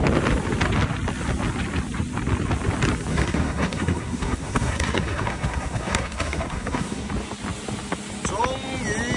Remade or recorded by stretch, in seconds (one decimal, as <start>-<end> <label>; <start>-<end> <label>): 0.0-3.1 recorded; 3.1-7.1 remade; 7.1-9.2 recorded